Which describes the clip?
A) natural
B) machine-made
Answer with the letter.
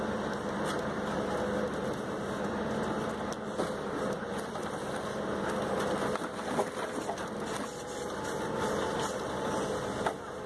A